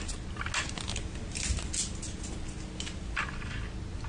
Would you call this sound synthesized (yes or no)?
no